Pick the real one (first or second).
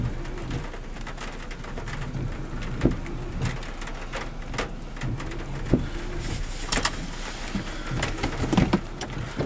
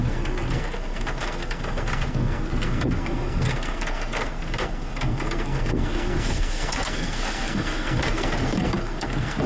first